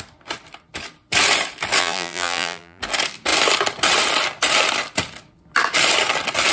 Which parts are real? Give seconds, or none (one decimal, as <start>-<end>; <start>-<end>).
0.0-1.8; 2.8-6.5